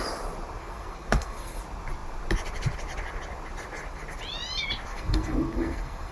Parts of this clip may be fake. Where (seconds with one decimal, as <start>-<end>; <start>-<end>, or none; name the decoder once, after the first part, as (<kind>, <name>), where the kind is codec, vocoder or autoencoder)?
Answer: 0.6-1.6 (codec, SNAC); 4.9-6.1